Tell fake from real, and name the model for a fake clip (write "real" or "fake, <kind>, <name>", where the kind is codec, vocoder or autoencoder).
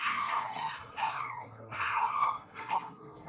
fake, codec, SNAC